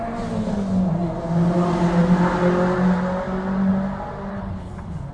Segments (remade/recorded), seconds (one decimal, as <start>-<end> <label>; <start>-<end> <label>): 0.0-4.3 recorded; 4.3-5.1 remade